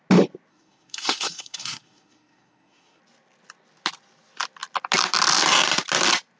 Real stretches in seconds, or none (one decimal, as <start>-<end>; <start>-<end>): 0.0-0.5; 3.0-6.4